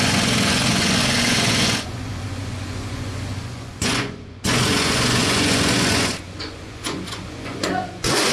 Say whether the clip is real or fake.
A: fake